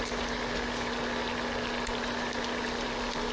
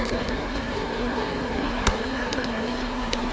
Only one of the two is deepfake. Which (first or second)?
second